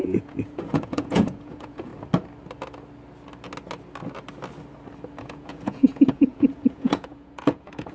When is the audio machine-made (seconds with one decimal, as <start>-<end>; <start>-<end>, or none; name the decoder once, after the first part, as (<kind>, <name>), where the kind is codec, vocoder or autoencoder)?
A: 0.0-1.9 (vocoder, Vocos); 5.2-7.9